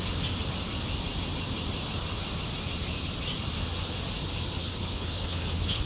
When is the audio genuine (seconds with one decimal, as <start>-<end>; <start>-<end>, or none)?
0.0-4.6